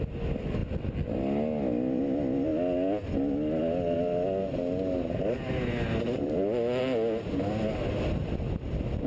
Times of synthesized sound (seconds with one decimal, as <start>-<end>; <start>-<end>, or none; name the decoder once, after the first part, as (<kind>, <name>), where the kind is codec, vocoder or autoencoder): none